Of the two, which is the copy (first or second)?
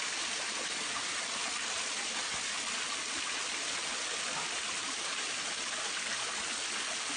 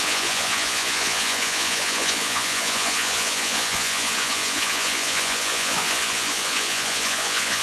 second